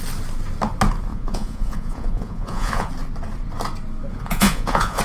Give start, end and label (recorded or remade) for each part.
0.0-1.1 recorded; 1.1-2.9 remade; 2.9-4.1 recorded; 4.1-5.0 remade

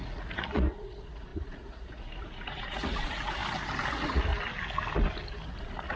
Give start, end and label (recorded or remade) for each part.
0.0-3.4 remade; 3.4-3.9 recorded; 3.9-4.3 remade; 4.3-5.6 recorded; 5.6-6.0 remade

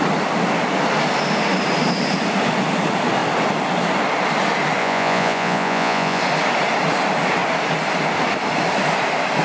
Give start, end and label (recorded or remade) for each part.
0.0-4.8 recorded; 4.8-6.2 remade; 6.2-9.4 recorded

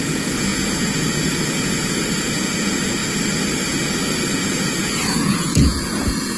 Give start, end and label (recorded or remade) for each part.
0.0-3.0 remade; 3.0-4.3 recorded; 4.3-6.4 remade

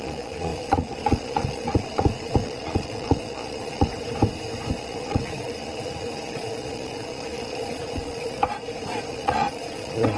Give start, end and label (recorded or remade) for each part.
0.0-3.9 remade; 3.9-4.8 recorded; 4.8-8.4 remade; 8.4-9.1 recorded; 9.1-10.2 remade

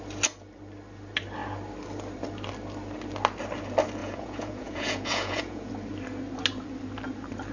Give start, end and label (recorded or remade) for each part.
0.0-4.0 recorded; 4.0-5.7 remade; 5.7-7.5 recorded